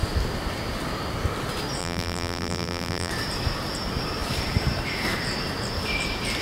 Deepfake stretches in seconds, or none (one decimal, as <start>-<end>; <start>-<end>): 1.8-3.1